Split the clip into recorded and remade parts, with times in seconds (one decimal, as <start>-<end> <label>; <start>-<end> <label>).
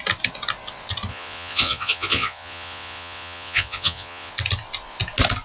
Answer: 0.0-1.1 recorded; 1.1-4.3 remade; 4.3-5.4 recorded